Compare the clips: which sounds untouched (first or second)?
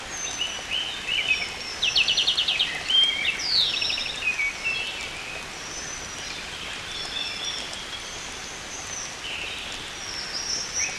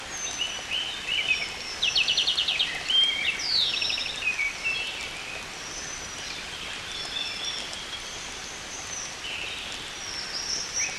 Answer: first